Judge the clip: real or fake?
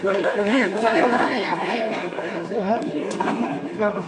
fake